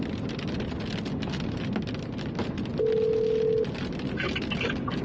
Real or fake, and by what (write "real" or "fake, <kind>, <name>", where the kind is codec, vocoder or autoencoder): real